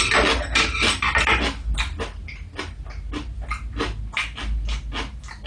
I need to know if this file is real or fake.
real